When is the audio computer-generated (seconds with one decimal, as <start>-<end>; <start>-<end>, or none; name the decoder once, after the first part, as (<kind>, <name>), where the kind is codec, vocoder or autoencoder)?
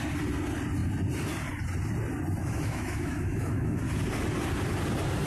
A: 2.4-3.8 (autoencoder, DAC-VAE)